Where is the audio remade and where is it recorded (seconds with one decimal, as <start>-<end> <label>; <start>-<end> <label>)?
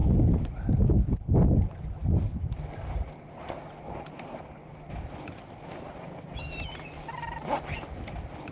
0.0-8.5 recorded